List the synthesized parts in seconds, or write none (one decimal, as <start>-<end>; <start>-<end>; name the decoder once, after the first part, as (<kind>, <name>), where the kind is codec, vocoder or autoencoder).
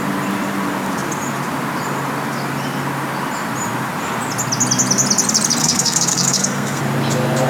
5.6-6.8 (codec, SNAC)